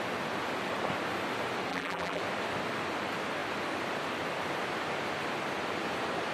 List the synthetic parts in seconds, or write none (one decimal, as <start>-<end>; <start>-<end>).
1.7-2.2